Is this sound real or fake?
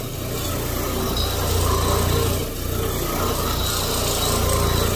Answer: real